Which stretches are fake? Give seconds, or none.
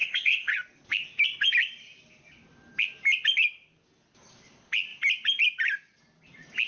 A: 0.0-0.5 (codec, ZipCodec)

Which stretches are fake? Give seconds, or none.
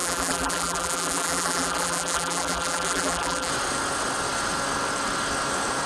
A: 0.0-3.5 (vocoder, BigVGAN v2)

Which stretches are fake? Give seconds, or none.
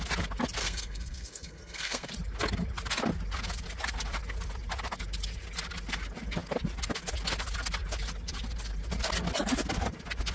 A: 0.6-2.1 (codec, SNAC)